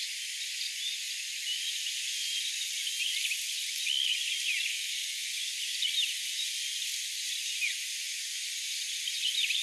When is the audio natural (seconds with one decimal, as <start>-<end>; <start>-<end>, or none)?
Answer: 0.0-4.7; 5.3-9.6